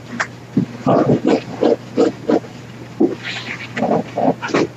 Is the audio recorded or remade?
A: recorded